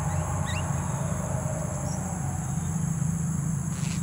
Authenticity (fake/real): real